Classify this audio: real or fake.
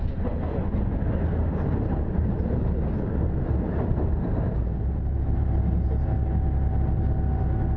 real